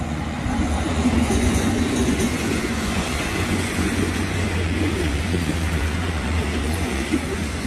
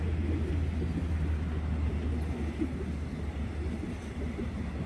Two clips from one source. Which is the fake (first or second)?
first